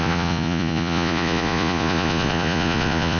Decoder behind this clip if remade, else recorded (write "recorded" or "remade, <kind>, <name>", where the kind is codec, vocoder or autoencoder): remade, vocoder, Vocos